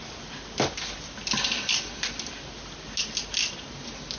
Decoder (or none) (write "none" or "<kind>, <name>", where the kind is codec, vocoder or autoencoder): none